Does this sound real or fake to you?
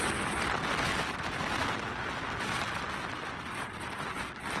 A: real